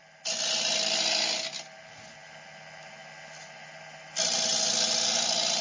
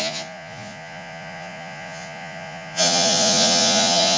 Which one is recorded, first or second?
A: first